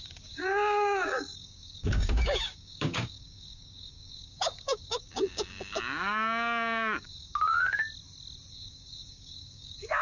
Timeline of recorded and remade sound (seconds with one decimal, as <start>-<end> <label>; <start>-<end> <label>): 0.0-7.8 remade; 7.8-8.5 recorded; 8.5-10.0 remade